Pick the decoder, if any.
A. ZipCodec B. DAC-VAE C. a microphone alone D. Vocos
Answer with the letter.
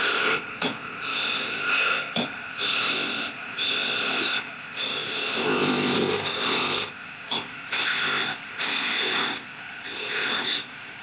A